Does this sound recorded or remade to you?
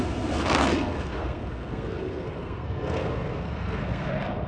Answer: remade